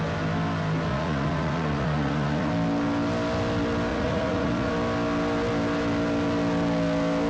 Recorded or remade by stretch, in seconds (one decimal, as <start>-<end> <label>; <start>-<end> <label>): 0.0-0.9 recorded; 0.9-2.5 remade; 2.5-3.9 recorded; 3.9-4.7 remade; 4.7-7.3 recorded